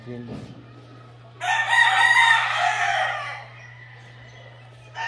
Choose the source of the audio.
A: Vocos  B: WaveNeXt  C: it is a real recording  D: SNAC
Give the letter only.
C